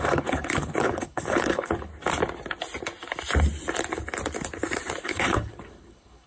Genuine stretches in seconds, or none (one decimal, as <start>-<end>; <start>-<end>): 1.9-5.0